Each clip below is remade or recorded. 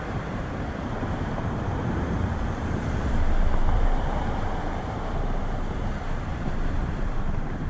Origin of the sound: remade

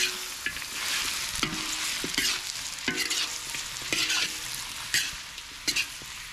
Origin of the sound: recorded